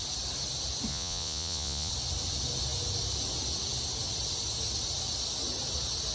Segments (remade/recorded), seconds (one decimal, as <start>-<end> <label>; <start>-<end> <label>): 0.0-0.9 recorded; 0.9-1.9 remade; 1.9-6.1 recorded